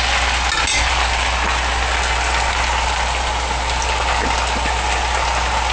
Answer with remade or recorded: recorded